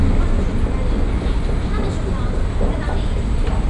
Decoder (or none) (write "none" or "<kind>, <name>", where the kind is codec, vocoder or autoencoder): none